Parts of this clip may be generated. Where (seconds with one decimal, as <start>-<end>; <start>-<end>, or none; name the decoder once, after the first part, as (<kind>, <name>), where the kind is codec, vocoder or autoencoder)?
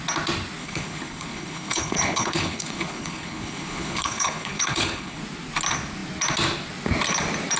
0.6-5.2 (codec, HILCodec)